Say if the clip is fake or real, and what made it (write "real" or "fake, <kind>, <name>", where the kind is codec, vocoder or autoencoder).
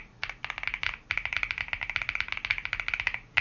real